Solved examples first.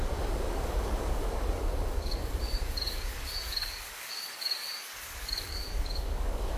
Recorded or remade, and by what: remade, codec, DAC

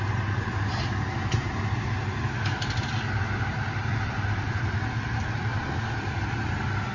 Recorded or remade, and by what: recorded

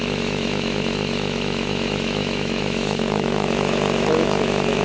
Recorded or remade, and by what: remade, autoencoder, DAC-VAE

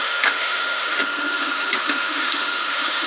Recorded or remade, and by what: remade, autoencoder, DAC-VAE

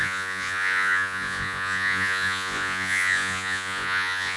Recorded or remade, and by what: remade, vocoder, Vocos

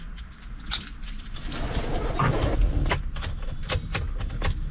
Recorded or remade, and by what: recorded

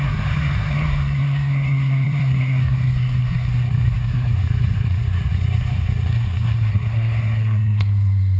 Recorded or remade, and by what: remade, codec, SNAC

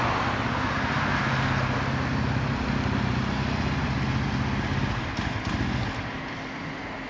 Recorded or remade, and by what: recorded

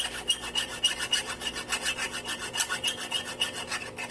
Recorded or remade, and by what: recorded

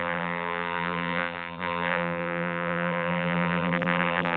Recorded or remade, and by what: remade, vocoder, BigVGAN v2